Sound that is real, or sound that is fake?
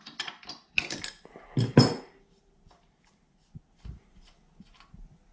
real